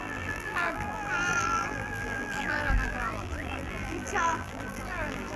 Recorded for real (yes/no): no